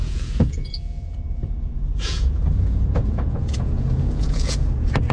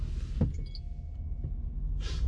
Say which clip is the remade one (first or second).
first